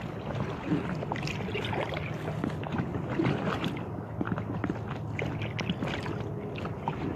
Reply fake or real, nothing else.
real